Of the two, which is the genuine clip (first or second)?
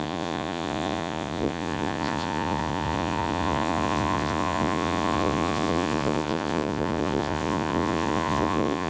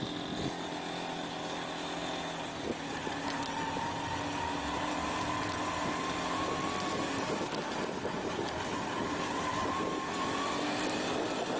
second